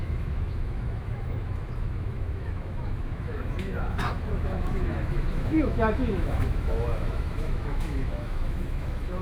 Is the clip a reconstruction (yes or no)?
yes